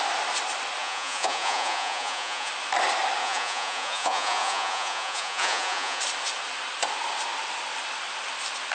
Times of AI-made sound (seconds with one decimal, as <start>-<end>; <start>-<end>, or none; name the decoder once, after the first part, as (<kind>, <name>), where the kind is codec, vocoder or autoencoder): 0.8-2.5 (vocoder, Vocos); 3.2-6.0